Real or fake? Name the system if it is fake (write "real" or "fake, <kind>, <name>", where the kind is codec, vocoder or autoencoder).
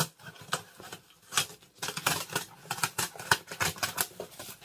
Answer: real